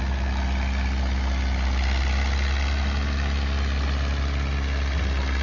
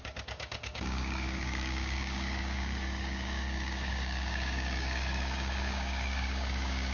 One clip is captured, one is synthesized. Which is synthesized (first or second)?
second